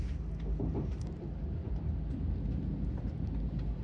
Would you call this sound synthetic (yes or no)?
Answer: no